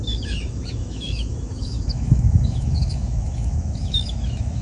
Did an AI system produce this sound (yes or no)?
yes